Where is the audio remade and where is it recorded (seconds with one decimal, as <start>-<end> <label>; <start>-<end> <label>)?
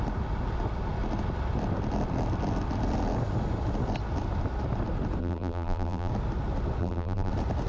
0.0-5.2 recorded; 5.2-6.1 remade; 6.1-6.8 recorded; 6.8-7.3 remade; 7.3-7.7 recorded